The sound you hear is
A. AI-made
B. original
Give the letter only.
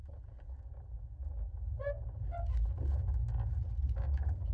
B